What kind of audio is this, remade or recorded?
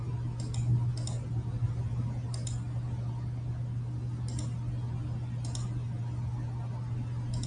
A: recorded